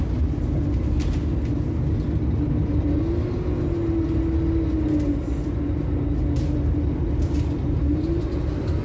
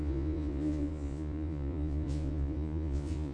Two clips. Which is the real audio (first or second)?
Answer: first